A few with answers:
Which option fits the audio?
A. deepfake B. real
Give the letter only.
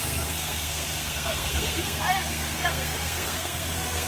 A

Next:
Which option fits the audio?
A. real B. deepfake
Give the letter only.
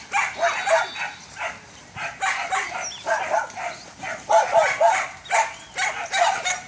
A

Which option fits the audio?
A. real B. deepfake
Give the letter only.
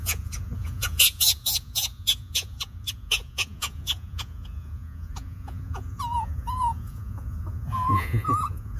B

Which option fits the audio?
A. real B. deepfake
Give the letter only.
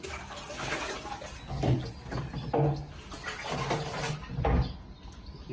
A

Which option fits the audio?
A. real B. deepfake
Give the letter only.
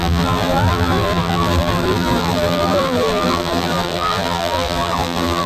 B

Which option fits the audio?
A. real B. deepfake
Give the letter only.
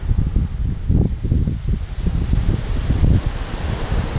A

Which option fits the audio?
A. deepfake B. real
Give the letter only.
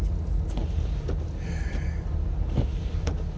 B